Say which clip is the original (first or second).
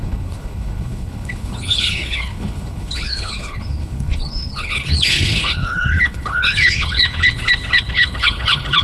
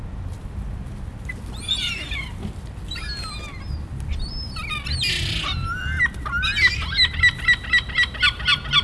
second